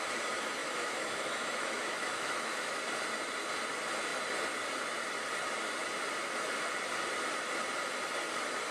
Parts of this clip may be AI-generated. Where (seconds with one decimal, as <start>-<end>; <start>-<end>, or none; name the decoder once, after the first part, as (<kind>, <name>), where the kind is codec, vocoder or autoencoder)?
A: 0.6-2.8 (autoencoder, DAC-VAE)